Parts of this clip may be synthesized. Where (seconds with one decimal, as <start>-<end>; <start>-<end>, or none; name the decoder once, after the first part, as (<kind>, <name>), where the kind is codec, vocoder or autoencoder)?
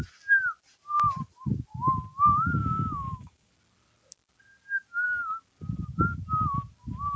2.6-3.5 (codec, DAC)